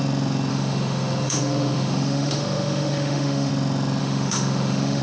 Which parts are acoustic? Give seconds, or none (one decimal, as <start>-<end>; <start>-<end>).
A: 0.0-0.5; 3.5-4.0

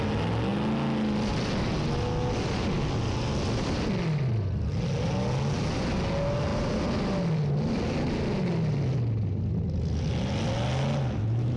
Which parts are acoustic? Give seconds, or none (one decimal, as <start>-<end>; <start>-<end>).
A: 0.0-11.6